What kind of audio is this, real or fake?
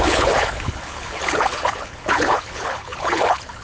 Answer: fake